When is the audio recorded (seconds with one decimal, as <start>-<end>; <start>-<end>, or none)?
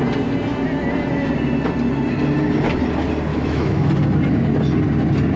0.0-3.3; 3.9-5.4